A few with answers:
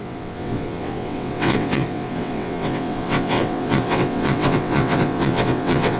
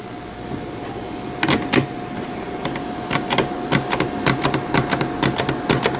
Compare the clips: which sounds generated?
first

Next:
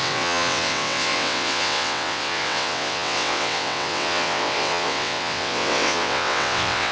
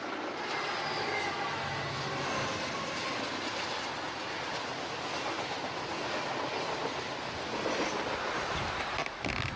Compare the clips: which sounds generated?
first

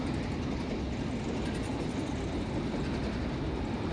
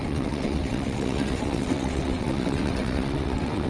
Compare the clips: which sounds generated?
second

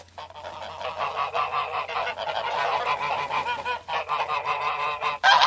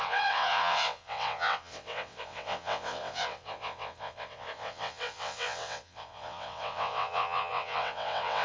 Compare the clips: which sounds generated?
second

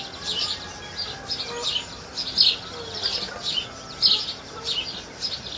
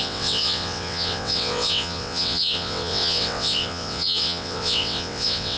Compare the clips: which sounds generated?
second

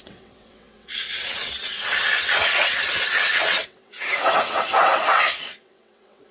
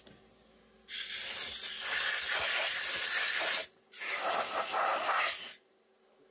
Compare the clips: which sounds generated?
first